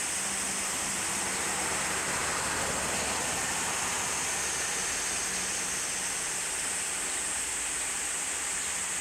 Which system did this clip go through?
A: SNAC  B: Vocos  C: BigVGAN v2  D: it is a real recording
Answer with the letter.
D